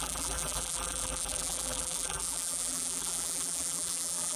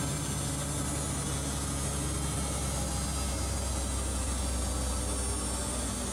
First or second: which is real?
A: second